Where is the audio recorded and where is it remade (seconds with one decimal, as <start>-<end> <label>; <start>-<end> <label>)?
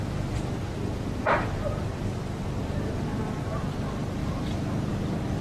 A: 0.0-5.4 remade